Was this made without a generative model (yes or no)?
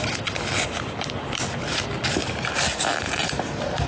yes